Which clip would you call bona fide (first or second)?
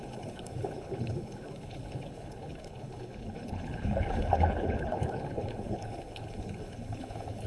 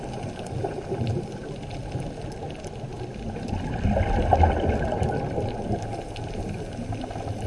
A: second